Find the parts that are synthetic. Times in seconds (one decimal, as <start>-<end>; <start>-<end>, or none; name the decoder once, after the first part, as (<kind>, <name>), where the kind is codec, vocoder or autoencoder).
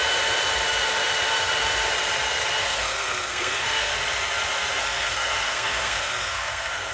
2.6-3.9 (codec, SNAC); 4.8-6.9